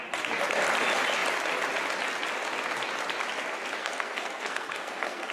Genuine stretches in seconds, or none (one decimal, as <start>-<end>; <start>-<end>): 0.0-3.8